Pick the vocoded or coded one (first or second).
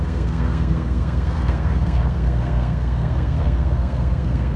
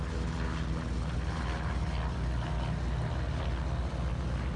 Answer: first